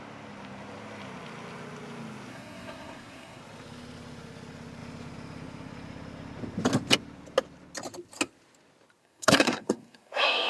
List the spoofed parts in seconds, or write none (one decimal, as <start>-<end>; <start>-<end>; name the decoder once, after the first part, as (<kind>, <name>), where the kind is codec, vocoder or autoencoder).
2.3-3.4 (codec, SNAC); 9.0-10.5